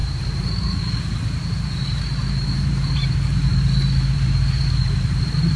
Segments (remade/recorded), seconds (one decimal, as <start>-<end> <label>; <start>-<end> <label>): 0.0-0.8 remade; 0.8-2.2 recorded; 2.2-5.6 remade